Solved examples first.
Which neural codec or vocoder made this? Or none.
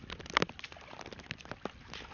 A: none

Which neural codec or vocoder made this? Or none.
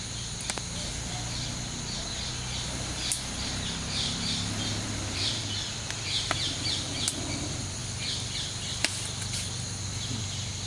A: none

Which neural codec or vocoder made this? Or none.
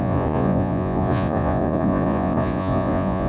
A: vocoder, Vocos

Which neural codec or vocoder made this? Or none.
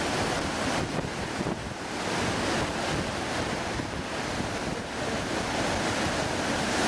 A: none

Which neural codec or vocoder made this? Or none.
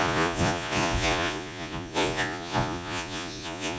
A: vocoder, Vocos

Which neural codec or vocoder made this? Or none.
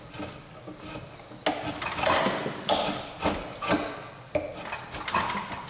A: none